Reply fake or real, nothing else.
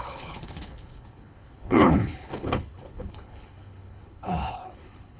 fake